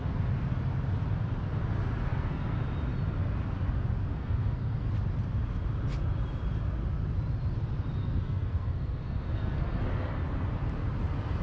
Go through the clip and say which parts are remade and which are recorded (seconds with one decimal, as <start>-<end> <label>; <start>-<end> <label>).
0.0-2.1 recorded; 2.1-2.6 remade; 2.6-4.1 recorded; 4.1-4.9 remade; 4.9-8.0 recorded; 8.0-9.8 remade; 9.8-11.4 recorded